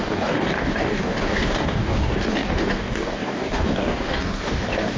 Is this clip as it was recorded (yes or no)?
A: no